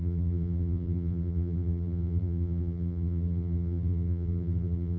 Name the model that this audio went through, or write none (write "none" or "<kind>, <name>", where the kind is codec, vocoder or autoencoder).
vocoder, BigVGAN v2